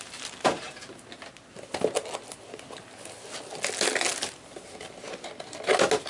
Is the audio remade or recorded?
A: recorded